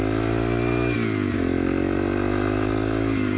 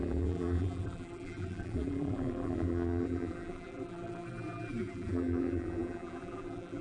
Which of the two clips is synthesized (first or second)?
second